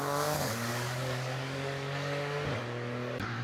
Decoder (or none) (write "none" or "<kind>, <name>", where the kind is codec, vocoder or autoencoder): codec, DAC